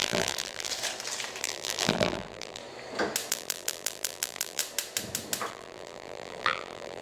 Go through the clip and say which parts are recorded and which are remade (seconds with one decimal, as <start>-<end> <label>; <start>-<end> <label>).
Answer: 0.0-0.7 remade; 0.7-1.4 recorded; 1.4-2.6 remade; 2.6-3.3 recorded; 3.3-4.6 remade; 4.6-5.5 recorded; 5.5-7.0 remade